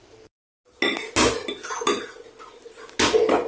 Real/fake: real